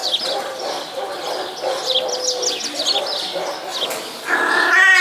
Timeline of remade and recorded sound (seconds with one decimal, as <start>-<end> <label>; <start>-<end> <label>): 0.0-5.0 recorded